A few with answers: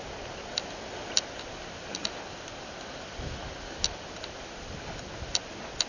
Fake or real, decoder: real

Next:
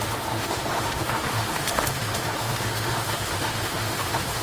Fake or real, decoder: fake, autoencoder, DAC-VAE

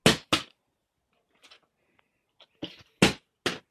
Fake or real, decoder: real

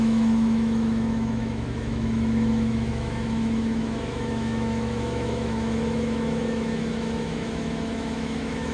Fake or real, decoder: fake, autoencoder, DAC-VAE